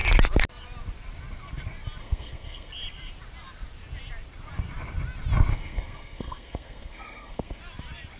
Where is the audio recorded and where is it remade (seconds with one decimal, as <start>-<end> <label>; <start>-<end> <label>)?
0.0-2.0 recorded; 2.0-2.7 remade; 2.7-5.5 recorded; 5.5-7.6 remade; 7.6-8.2 recorded